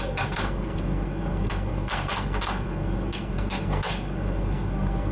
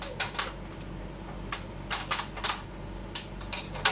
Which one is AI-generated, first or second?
first